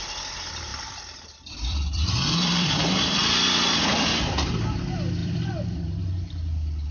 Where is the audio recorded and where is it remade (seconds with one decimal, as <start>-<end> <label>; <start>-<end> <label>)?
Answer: 0.0-0.7 recorded; 0.7-4.8 remade; 4.8-5.2 recorded; 5.2-5.9 remade; 5.9-6.9 recorded